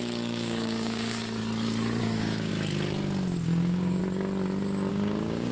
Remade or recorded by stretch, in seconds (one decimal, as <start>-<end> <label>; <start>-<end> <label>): 0.0-1.4 remade; 1.4-2.0 recorded; 2.0-2.5 remade; 2.5-3.6 recorded; 3.6-4.0 remade; 4.0-4.9 recorded; 4.9-5.5 remade